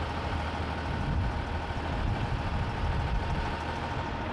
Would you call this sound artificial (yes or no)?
no